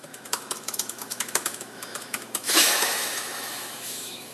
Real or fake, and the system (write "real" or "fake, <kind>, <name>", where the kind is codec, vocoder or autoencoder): fake, autoencoder, DAC-VAE